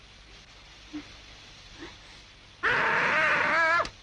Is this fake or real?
real